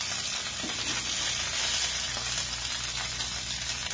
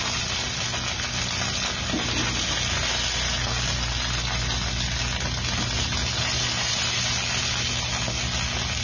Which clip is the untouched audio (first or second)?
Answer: second